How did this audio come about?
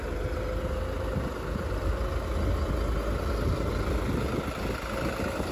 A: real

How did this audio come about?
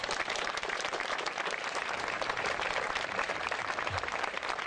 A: fake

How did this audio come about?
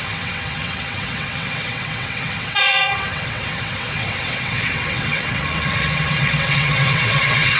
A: fake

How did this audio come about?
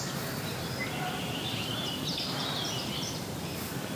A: fake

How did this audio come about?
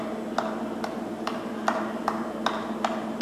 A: real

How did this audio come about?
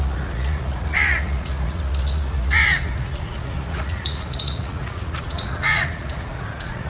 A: fake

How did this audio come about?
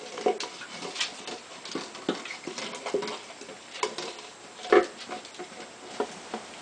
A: real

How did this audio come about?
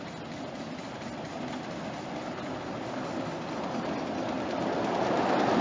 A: real